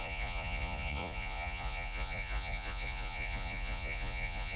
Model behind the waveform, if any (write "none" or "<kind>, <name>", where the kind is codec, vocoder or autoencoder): vocoder, Vocos